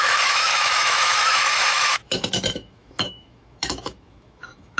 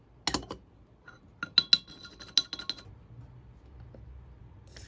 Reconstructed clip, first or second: first